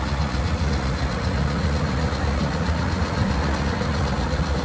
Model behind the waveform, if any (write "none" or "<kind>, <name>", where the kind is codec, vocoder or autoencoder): vocoder, Vocos